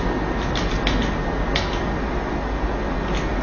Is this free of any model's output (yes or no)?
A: yes